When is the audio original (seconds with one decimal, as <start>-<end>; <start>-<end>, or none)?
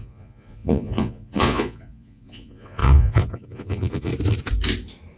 4.1-5.2